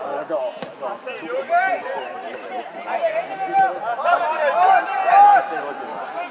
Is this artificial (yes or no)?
no